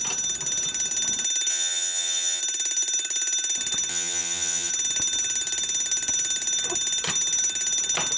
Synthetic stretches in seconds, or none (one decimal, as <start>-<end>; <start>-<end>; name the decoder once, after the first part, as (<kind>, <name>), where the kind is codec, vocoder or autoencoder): 1.5-2.4 (vocoder, HiFi-GAN); 3.9-4.7